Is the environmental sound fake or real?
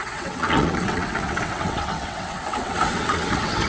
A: fake